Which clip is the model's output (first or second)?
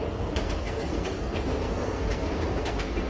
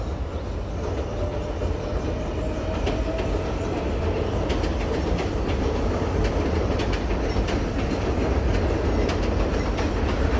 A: first